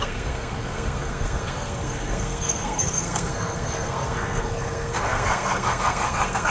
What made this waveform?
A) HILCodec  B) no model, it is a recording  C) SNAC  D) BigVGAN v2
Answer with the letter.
C